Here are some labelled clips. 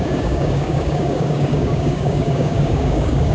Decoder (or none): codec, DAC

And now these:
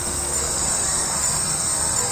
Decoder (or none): codec, SNAC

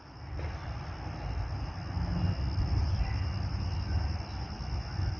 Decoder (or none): none